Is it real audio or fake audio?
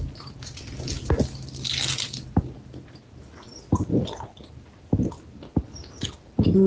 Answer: real